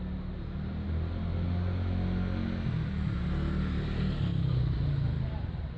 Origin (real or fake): real